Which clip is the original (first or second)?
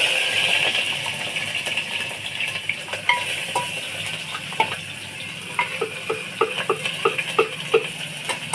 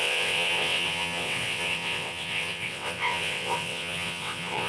first